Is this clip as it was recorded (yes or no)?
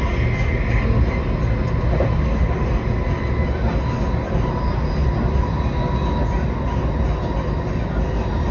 yes